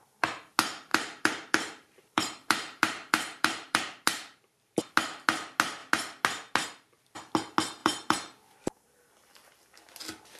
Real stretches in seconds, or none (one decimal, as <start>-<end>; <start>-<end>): 0.0-0.9; 4.8-7.8; 9.1-10.4

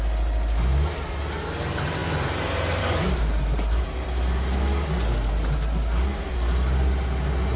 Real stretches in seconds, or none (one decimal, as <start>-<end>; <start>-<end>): 0.0-7.6

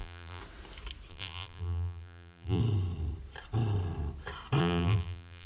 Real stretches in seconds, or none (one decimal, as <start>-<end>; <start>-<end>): 0.4-1.1; 2.6-4.6

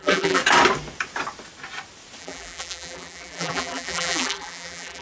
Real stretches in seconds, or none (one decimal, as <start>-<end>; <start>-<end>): 0.4-2.2

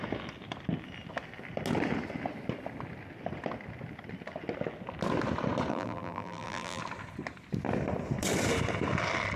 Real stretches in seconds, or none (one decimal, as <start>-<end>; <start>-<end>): 0.0-5.7; 6.8-9.4

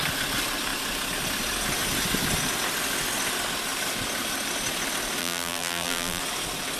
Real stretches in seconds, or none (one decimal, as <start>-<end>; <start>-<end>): 0.0-5.2; 6.2-6.8